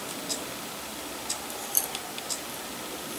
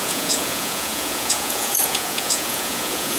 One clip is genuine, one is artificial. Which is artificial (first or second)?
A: second